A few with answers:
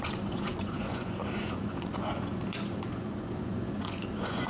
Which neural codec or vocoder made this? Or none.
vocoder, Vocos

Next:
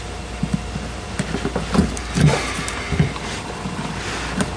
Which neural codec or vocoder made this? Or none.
none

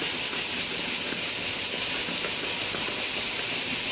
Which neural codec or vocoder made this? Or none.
none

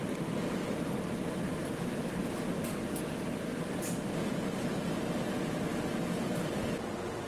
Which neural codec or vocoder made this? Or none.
none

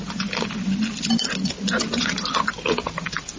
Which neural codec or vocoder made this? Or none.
none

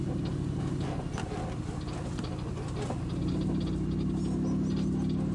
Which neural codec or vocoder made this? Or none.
none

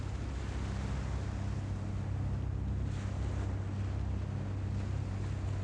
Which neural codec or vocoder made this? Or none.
none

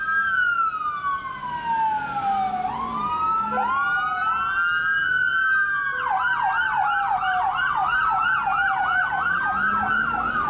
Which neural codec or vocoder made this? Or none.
none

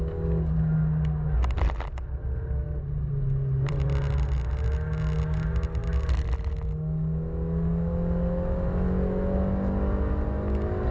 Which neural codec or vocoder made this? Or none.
none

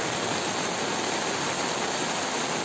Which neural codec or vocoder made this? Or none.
none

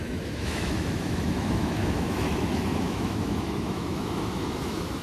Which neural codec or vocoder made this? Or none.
autoencoder, DAC-VAE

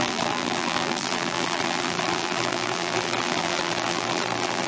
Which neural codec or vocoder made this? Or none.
vocoder, BigVGAN v2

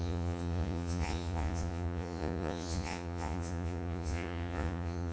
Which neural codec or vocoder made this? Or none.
vocoder, Vocos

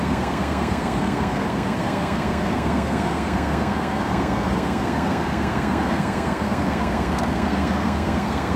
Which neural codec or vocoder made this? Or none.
codec, SNAC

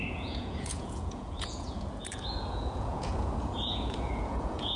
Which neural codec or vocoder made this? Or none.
vocoder, Vocos